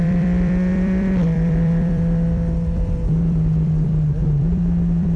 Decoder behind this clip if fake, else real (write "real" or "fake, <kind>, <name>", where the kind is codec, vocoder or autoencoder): fake, vocoder, BigVGAN v2